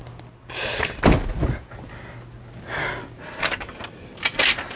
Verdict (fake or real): real